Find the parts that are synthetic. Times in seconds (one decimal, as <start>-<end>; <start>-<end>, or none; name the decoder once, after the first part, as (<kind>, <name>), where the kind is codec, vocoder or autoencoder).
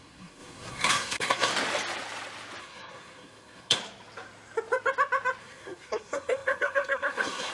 0.0-1.5 (codec, SNAC); 2.6-3.8; 5.4-7.5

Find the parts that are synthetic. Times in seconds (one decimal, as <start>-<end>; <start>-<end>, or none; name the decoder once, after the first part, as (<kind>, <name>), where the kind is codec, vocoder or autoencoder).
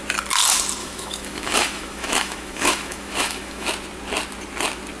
0.8-3.7 (autoencoder, DAC-VAE)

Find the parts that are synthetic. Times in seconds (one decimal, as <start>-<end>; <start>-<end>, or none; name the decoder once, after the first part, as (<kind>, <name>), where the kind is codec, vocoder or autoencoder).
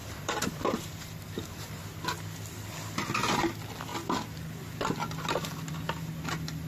0.0-2.0 (vocoder, BigVGAN v2)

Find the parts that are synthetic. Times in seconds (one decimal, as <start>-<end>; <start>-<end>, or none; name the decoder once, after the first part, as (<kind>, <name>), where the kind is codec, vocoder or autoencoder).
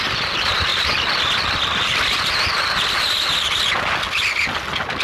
none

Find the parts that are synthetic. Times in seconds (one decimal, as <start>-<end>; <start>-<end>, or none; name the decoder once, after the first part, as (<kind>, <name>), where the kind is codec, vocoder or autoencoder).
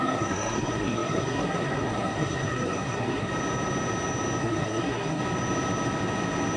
0.0-3.3 (codec, SNAC); 4.4-5.2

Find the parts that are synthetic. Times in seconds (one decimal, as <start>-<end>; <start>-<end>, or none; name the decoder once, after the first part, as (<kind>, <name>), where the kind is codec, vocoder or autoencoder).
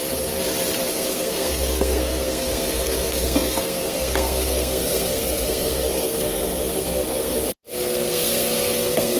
0.0-0.4 (codec, SNAC); 0.9-9.2